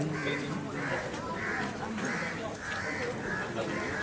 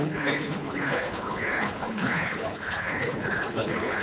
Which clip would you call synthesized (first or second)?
second